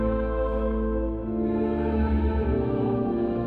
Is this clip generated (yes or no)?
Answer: yes